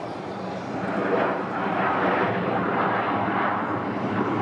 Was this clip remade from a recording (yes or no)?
yes